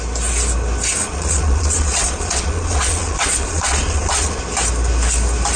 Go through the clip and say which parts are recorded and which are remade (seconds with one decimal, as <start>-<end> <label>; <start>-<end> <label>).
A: 0.0-1.0 recorded; 1.0-4.4 remade; 4.4-5.6 recorded